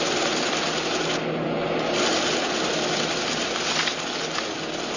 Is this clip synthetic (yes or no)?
no